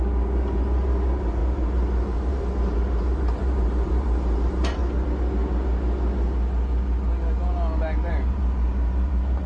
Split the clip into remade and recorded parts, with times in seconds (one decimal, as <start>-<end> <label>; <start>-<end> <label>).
0.0-4.8 remade; 4.8-8.1 recorded; 8.1-9.5 remade